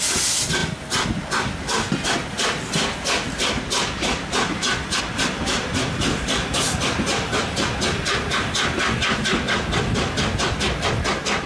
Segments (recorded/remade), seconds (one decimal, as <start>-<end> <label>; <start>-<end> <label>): 0.0-11.5 recorded